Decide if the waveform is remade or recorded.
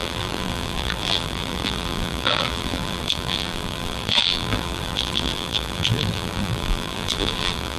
remade